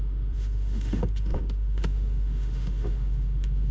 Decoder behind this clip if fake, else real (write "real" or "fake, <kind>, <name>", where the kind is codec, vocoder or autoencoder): fake, autoencoder, DAC-VAE